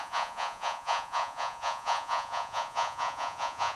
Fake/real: fake